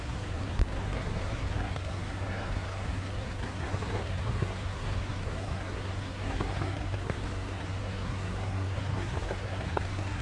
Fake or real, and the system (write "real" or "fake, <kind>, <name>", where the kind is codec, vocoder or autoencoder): fake, codec, SNAC